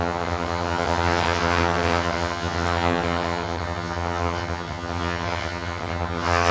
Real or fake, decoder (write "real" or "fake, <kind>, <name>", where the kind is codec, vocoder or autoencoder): fake, vocoder, HiFi-GAN